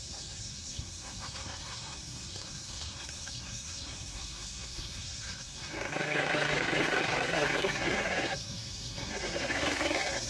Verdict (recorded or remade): remade